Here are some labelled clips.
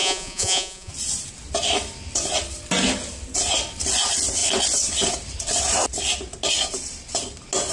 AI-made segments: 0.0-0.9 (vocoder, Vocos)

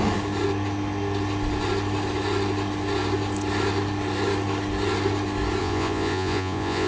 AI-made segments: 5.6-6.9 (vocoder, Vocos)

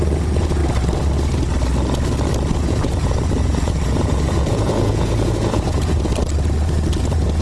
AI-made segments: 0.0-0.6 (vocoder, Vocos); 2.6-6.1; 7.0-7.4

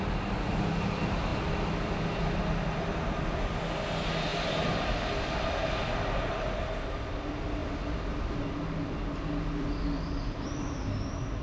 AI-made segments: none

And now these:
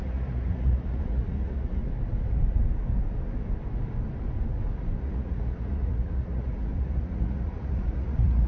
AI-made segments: 0.0-1.8 (vocoder, Vocos); 5.0-8.5

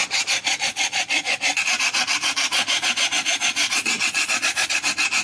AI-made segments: 0.0-1.5 (vocoder, Vocos); 2.6-4.7